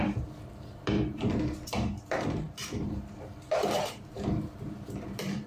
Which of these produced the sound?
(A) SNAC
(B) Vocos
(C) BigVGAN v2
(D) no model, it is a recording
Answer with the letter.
C